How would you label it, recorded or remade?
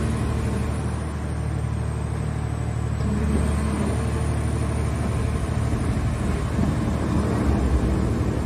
recorded